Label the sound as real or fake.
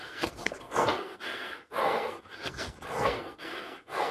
fake